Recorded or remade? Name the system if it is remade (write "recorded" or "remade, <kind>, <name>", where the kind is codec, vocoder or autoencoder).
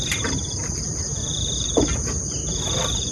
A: remade, vocoder, BigVGAN v2